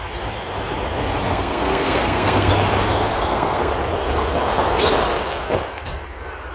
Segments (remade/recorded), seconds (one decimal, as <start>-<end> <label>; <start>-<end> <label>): 0.0-1.3 recorded; 1.3-2.5 remade; 2.5-3.1 recorded; 3.1-3.7 remade; 3.7-6.5 recorded

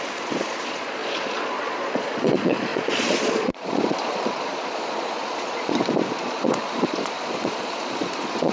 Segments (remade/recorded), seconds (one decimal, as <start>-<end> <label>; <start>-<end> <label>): 0.0-8.5 remade

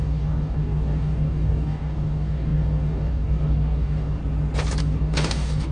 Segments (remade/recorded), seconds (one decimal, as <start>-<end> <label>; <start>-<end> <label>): 0.0-4.2 remade; 4.2-4.8 recorded; 4.8-5.7 remade

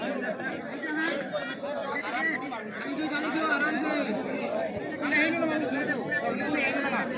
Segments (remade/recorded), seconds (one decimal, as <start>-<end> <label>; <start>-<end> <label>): 0.0-1.8 recorded; 1.8-4.7 remade; 4.7-7.2 recorded

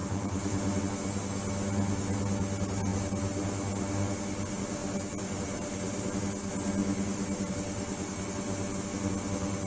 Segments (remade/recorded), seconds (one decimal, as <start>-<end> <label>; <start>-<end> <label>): 0.0-0.8 remade; 0.8-4.8 recorded; 4.8-6.1 remade; 6.1-9.7 recorded

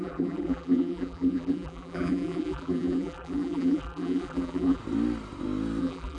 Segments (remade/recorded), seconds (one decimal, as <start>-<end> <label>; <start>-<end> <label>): 0.0-4.8 remade; 4.8-5.8 recorded; 5.8-6.2 remade

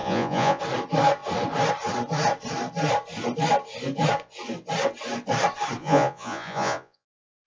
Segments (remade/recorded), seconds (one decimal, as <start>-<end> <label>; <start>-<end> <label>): 0.0-0.6 remade; 0.6-5.8 recorded; 5.8-7.5 remade

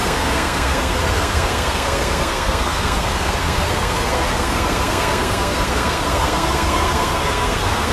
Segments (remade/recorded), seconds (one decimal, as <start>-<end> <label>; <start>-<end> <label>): 0.0-7.9 remade